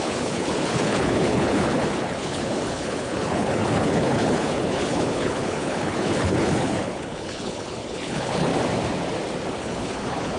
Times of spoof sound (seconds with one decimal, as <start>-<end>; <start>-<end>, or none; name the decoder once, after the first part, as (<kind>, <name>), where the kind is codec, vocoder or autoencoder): 0.0-8.5 (codec, HILCodec); 9.6-10.4